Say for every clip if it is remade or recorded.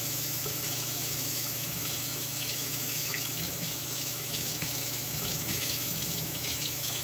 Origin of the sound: remade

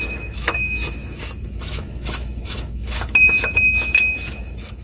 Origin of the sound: remade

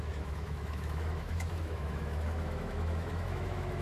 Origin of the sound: remade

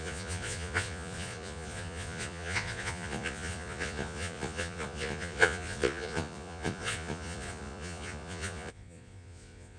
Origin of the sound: remade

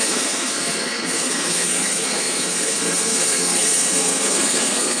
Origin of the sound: remade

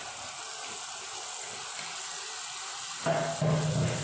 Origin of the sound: recorded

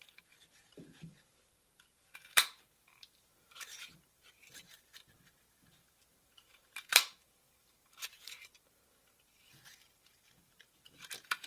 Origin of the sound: remade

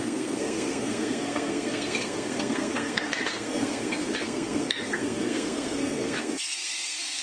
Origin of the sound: remade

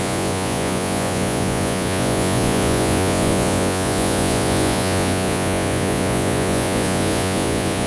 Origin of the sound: remade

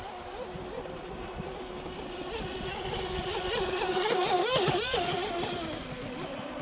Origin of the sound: recorded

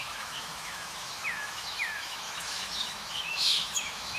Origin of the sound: remade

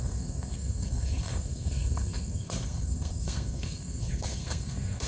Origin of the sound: remade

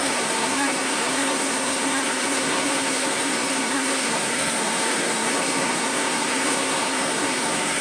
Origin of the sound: remade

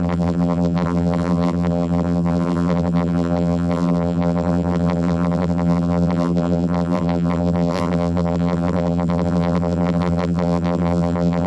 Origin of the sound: remade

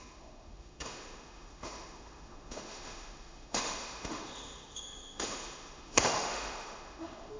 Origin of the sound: remade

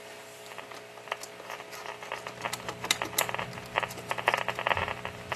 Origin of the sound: recorded